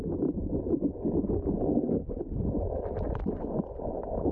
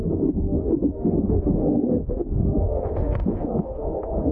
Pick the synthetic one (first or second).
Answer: second